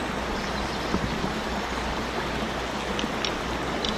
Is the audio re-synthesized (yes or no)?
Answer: no